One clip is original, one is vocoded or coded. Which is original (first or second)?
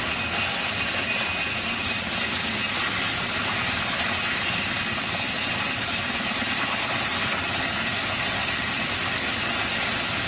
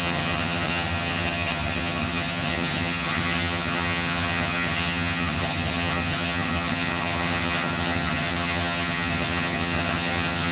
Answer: first